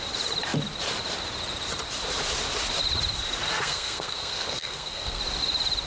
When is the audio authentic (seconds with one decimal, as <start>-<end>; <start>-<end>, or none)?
0.0-3.5; 5.2-5.9